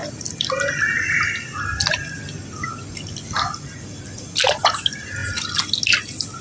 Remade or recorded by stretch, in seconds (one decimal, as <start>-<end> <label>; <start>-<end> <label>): 0.0-6.4 recorded